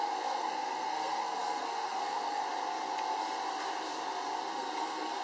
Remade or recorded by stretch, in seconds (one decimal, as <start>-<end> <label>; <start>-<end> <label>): 0.0-2.4 remade; 2.4-4.5 recorded; 4.5-5.2 remade